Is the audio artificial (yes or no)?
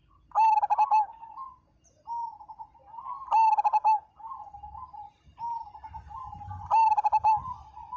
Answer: no